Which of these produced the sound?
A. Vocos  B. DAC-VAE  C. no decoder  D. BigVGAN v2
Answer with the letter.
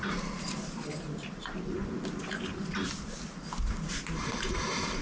C